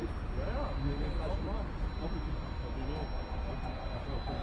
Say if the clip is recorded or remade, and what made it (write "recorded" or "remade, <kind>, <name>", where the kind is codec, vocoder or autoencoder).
recorded